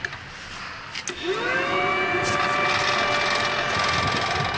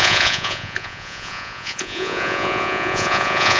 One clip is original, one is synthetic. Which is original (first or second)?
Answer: first